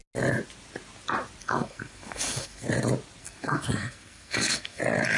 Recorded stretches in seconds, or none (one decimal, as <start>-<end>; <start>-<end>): 0.0-1.4; 2.7-3.2; 4.8-5.2